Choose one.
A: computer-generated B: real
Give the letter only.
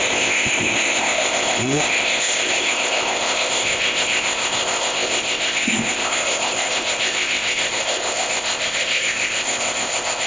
A